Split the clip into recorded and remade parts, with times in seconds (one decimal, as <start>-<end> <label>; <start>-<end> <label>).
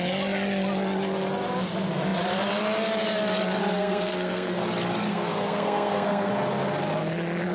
0.0-3.6 recorded; 3.6-4.6 remade; 4.6-5.1 recorded; 5.1-6.3 remade; 6.3-7.5 recorded